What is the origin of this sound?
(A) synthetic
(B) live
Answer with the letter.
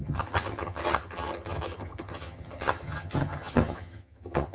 A